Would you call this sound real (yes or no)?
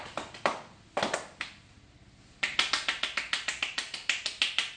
yes